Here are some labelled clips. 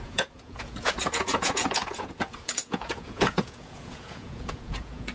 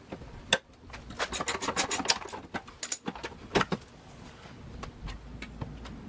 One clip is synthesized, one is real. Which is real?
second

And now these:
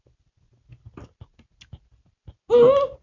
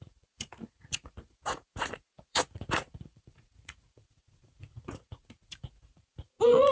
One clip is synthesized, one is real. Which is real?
first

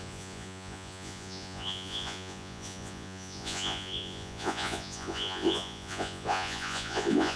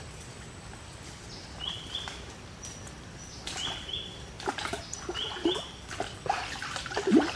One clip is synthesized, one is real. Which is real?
second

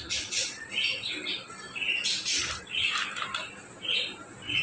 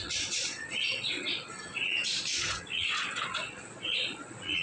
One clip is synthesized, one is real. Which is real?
first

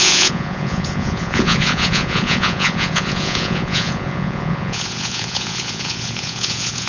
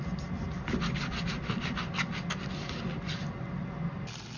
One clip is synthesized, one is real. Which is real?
second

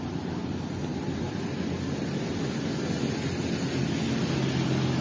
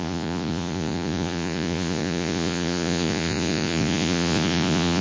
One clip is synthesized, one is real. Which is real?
first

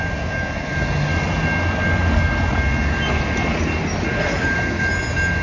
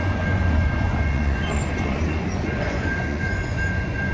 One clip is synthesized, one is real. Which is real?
first